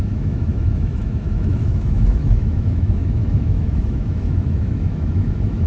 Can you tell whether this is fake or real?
fake